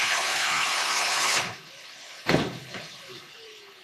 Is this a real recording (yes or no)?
no